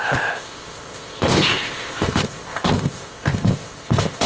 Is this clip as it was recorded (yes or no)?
no